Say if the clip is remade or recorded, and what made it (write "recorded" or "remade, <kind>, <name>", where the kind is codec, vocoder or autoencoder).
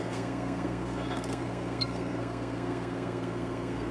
remade, codec, SNAC